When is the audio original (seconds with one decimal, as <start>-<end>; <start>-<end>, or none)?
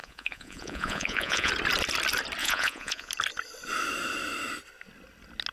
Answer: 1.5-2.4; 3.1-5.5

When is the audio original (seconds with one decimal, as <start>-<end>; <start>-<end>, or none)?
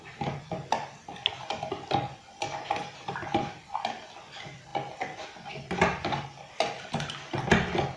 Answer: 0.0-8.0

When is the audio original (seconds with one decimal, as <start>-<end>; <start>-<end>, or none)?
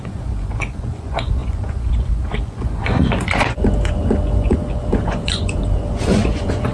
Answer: none